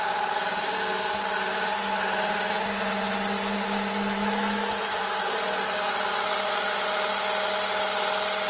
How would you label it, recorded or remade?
recorded